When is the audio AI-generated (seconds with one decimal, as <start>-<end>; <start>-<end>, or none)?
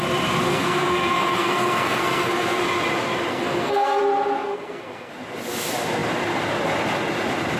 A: 0.5-2.6; 3.3-4.0; 4.4-5.1